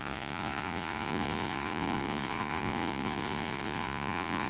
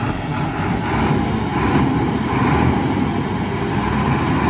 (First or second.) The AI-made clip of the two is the first